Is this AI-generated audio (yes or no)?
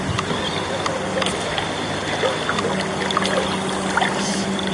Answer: no